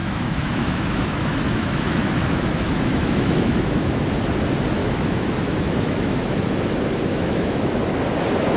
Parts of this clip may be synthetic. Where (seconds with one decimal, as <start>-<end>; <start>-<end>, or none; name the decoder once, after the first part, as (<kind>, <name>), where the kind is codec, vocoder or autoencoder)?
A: 0.0-4.1 (autoencoder, DAC-VAE); 4.8-6.5; 7.1-7.8